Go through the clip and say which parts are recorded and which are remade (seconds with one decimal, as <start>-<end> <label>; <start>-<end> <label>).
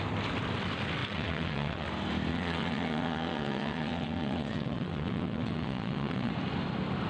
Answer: 0.0-1.0 recorded; 1.0-1.9 remade; 1.9-2.3 recorded; 2.3-6.3 remade; 6.3-7.1 recorded